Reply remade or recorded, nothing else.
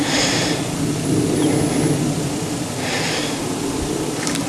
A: recorded